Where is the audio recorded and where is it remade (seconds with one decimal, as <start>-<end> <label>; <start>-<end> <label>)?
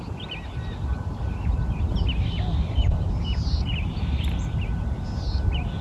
0.0-0.9 recorded; 0.9-1.9 remade; 1.9-5.8 recorded